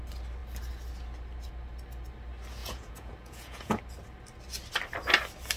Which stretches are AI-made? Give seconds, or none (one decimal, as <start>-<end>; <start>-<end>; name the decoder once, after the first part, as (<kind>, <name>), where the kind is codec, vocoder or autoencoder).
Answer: 2.6-3.8 (vocoder, Vocos)